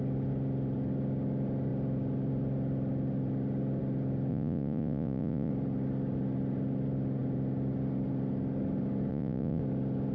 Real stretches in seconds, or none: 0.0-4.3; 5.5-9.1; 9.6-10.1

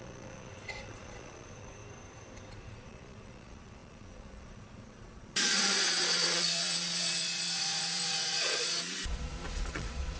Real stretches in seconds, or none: 1.8-2.5